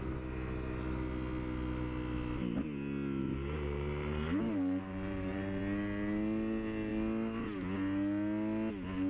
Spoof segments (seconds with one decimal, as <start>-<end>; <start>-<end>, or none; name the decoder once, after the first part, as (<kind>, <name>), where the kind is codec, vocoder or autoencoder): 3.2-5.6 (vocoder, BigVGAN v2)